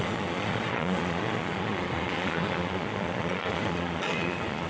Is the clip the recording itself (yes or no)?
no